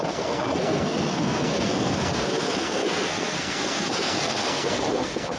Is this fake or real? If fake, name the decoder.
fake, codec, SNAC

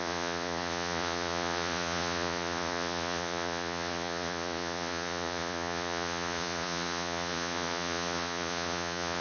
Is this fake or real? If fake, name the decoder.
fake, vocoder, Vocos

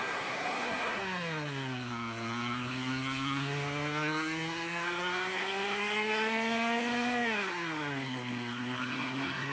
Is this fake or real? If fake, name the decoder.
fake, codec, SNAC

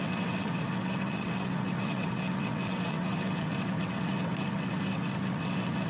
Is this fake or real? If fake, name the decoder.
fake, vocoder, WaveNeXt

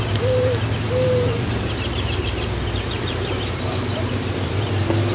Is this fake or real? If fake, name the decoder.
fake, vocoder, BigVGAN v2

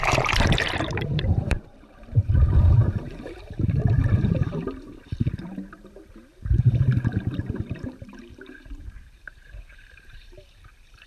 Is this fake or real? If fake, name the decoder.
fake, vocoder, BigVGAN v2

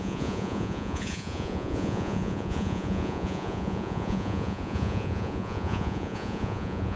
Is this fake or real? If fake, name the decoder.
fake, vocoder, Vocos